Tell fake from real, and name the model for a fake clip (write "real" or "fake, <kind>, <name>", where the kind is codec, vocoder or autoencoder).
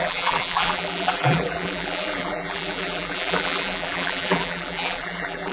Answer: fake, vocoder, BigVGAN v2